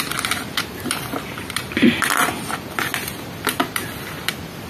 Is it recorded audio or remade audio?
recorded